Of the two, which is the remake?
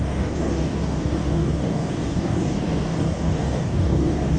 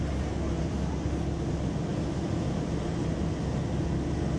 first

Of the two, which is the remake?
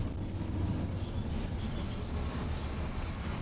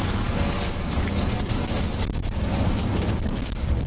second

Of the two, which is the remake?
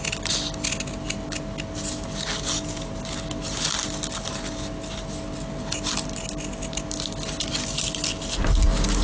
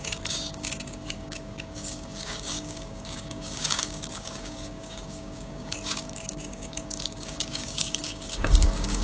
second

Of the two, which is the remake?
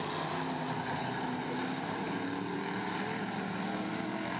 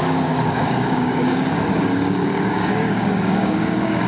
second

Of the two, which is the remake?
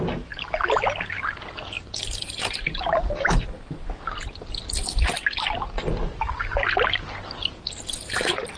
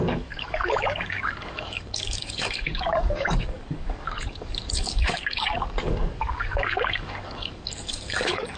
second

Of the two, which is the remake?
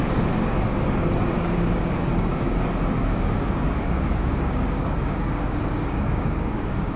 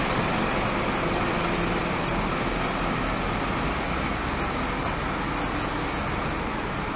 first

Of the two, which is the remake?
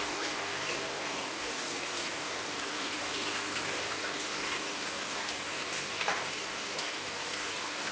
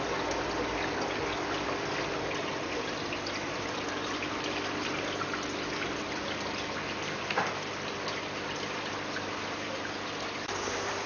first